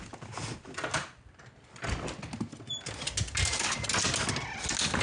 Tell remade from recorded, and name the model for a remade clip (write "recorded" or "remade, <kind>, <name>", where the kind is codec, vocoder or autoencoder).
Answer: recorded